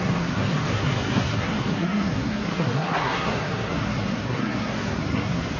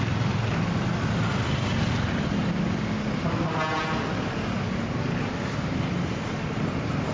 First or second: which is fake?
first